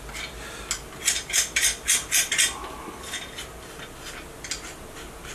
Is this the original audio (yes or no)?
yes